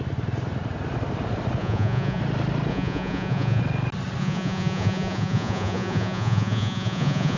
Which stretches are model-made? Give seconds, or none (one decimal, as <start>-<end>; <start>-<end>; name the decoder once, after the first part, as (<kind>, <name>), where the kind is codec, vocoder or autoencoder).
1.6-2.2 (vocoder, Vocos); 2.7-3.6; 4.2-7.4